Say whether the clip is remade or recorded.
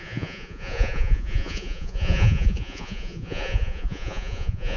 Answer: remade